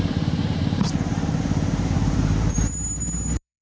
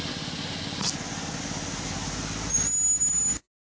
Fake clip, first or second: first